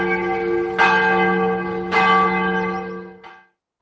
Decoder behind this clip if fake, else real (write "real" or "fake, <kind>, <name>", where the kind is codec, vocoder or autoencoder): real